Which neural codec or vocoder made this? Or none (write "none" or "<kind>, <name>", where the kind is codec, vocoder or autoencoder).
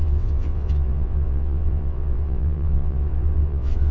vocoder, WaveNeXt